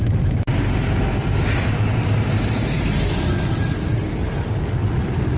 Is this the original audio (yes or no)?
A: yes